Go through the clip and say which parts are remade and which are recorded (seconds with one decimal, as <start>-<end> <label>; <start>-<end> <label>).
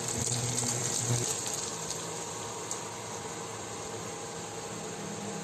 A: 0.0-0.6 recorded; 0.6-2.8 remade; 2.8-3.5 recorded; 3.5-4.1 remade; 4.1-5.4 recorded